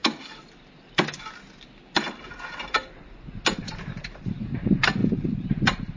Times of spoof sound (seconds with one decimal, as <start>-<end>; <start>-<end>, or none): 3.6-6.0

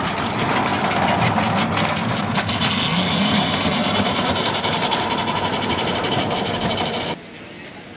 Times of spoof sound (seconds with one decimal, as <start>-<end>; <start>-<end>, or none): 3.8-7.0

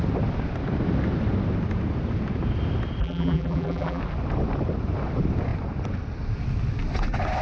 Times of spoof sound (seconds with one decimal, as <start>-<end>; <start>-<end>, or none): 3.0-4.0

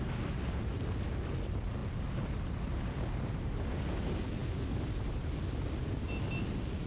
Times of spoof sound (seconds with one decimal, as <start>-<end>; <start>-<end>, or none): none

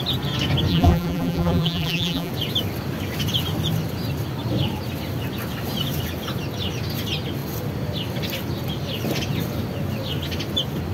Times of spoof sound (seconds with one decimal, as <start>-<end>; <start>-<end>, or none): 0.7-2.3

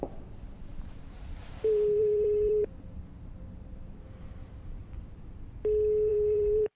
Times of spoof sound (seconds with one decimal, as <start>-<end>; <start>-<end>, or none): 0.7-4.8; 6.1-6.8

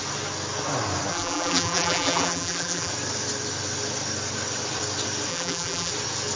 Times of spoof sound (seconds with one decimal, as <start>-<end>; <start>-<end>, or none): 1.1-2.9; 5.3-5.9

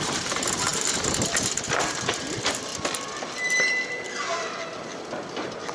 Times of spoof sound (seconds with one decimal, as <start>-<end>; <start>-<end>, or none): 0.0-2.7; 5.3-5.7